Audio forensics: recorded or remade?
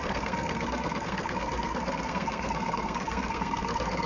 remade